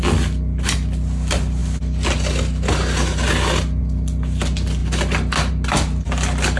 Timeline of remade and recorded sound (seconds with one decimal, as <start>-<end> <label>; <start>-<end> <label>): 0.0-6.6 recorded